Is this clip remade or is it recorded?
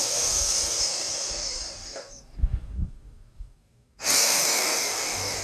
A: remade